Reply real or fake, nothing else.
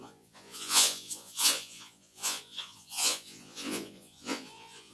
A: fake